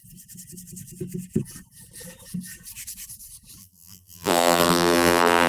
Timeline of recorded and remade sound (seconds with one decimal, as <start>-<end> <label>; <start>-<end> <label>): 0.0-3.6 recorded; 3.6-5.5 remade